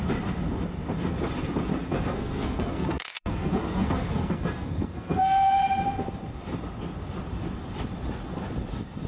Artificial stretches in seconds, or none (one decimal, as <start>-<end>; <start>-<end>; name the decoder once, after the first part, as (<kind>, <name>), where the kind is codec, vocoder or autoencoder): 1.8-5.6 (codec, SNAC)